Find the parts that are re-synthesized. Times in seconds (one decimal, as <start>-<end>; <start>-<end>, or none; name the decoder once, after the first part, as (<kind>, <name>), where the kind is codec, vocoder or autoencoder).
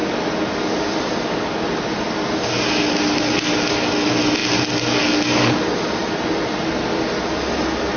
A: none